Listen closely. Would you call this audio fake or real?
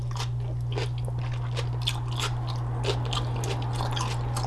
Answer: real